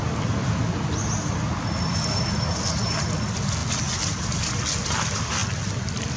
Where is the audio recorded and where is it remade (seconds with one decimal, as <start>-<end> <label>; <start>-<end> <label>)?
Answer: 0.0-6.2 recorded